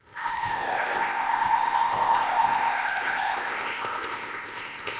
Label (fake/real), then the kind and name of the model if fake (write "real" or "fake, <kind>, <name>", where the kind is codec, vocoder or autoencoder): fake, codec, ZipCodec